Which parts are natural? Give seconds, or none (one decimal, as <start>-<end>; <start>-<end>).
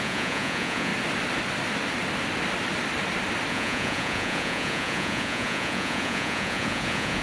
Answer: 0.9-3.5